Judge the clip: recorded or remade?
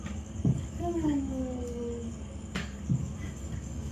remade